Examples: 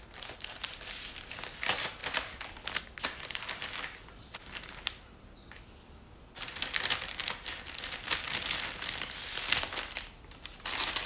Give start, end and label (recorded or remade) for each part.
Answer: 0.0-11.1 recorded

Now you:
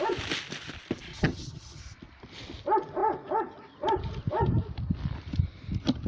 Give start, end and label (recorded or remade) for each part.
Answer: 0.0-1.1 recorded; 1.1-1.8 remade; 1.8-6.1 recorded

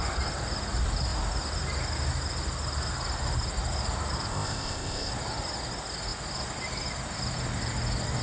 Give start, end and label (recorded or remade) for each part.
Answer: 0.0-4.3 recorded; 4.3-5.1 remade; 5.1-8.2 recorded

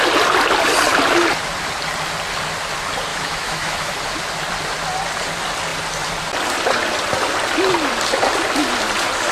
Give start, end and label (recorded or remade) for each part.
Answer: 0.0-3.1 recorded; 3.1-3.9 remade; 3.9-9.3 recorded

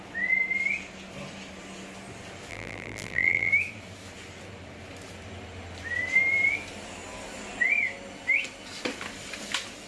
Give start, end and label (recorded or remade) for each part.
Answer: 0.0-2.5 recorded; 2.5-3.5 remade; 3.5-9.9 recorded

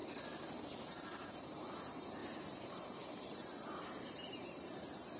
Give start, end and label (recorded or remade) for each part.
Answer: 0.0-1.3 recorded; 1.3-5.2 remade

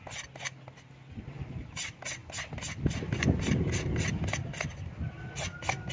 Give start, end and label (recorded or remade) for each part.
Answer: 0.0-5.9 recorded

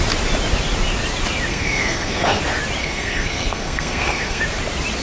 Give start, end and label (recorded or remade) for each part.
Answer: 0.0-1.5 recorded; 1.5-2.4 remade; 2.4-2.8 recorded; 2.8-4.4 remade; 4.4-5.0 recorded